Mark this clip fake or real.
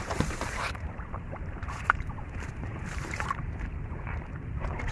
fake